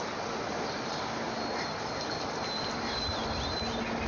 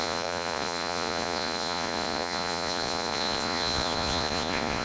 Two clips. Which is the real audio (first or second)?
first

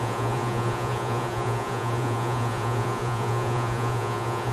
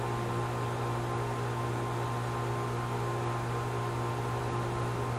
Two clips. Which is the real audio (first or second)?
second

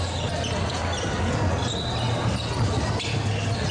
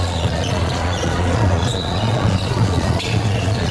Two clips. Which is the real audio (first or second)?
first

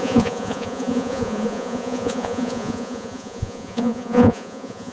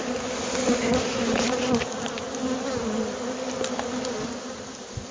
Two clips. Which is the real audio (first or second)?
second